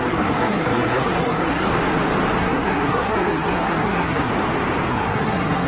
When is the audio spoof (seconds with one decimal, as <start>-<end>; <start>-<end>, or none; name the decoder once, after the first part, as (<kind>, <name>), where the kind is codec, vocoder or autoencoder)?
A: 0.0-1.7 (codec, SNAC); 2.4-4.3; 4.9-5.7